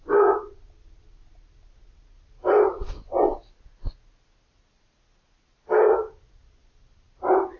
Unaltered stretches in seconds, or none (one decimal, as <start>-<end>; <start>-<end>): 0.0-7.6